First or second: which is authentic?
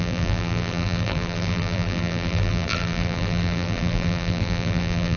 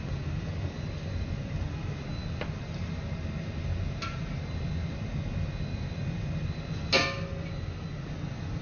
second